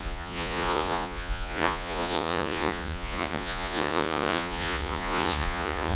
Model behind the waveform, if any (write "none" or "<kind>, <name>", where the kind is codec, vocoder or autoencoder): vocoder, Vocos